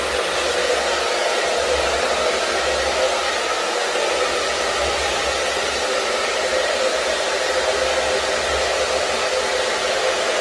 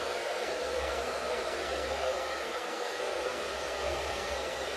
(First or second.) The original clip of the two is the first